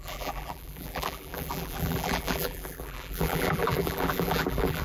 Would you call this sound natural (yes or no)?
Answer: no